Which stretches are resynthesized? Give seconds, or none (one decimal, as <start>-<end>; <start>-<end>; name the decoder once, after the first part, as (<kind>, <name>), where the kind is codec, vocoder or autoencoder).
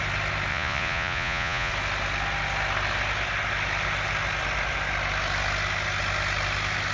0.5-1.7 (vocoder, Vocos)